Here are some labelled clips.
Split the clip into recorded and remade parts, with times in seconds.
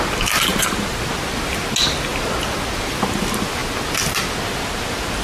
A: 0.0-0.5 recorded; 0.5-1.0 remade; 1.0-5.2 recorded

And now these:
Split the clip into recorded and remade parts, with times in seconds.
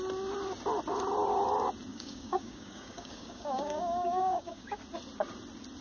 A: 0.0-1.9 recorded; 1.9-4.8 remade; 4.8-5.8 recorded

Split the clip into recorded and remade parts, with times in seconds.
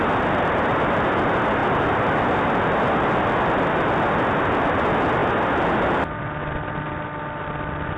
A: 0.0-8.0 recorded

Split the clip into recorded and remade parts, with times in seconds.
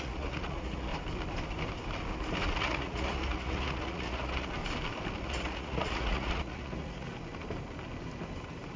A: 0.0-0.9 remade; 0.9-2.4 recorded; 2.4-4.6 remade; 4.6-5.2 recorded; 5.2-7.1 remade; 7.1-8.8 recorded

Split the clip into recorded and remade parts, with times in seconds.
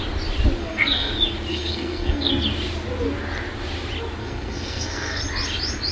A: 0.0-0.6 recorded; 0.6-1.1 remade; 1.1-1.5 recorded; 1.5-2.3 remade; 2.3-4.2 recorded; 4.2-5.2 remade; 5.2-5.9 recorded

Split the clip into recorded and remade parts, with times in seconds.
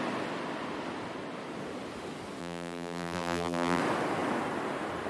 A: 0.0-2.4 recorded; 2.4-3.8 remade; 3.8-5.1 recorded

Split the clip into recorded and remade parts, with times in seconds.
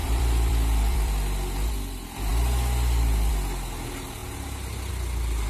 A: 0.0-1.5 remade; 1.5-5.5 recorded